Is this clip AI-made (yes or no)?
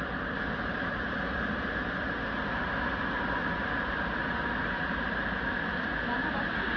no